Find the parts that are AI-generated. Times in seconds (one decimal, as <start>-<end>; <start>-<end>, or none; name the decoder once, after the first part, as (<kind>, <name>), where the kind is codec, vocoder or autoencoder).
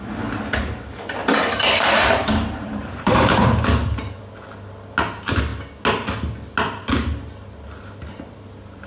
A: 1.2-4.2 (vocoder, BigVGAN v2)